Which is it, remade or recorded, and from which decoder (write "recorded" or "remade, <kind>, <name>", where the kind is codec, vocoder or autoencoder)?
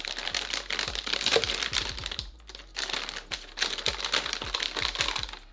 recorded